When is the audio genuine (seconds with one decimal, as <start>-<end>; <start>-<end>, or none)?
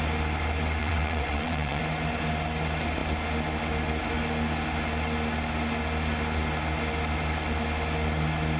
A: 0.0-0.8; 1.8-8.6